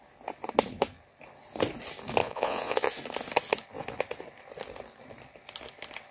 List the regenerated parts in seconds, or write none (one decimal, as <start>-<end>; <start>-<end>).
2.2-2.9